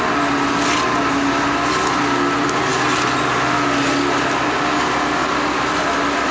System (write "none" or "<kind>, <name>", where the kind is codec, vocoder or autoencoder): none